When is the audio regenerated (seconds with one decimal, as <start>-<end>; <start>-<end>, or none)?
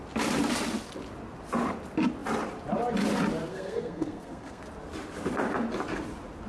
3.5-4.6